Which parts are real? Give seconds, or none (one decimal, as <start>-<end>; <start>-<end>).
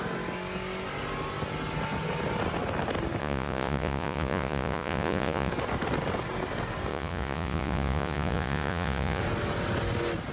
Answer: 0.0-3.2; 5.5-6.9; 9.2-10.3